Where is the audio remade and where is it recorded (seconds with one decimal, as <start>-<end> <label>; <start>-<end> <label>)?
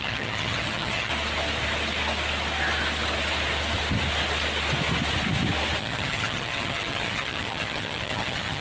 0.0-1.1 remade; 1.1-5.8 recorded; 5.8-8.6 remade